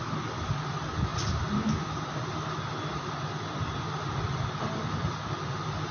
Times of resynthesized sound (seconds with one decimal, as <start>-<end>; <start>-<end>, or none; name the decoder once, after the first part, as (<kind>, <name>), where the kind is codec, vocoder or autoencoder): none